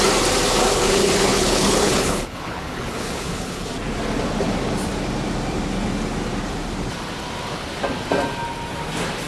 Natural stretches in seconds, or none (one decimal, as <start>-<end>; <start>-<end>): 0.0-0.7; 3.7-9.3